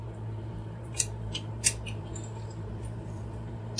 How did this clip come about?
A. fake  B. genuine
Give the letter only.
A